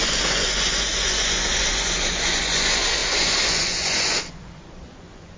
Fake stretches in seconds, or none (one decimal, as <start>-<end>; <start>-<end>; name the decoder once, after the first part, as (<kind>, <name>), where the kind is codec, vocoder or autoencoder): 0.0-5.4 (vocoder, Vocos)